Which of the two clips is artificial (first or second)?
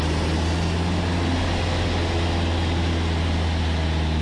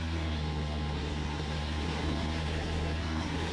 second